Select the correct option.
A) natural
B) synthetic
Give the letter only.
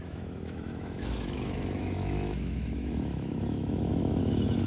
B